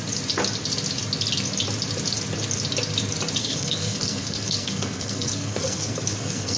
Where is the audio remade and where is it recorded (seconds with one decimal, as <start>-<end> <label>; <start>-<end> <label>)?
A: 0.0-3.4 recorded; 3.4-6.6 remade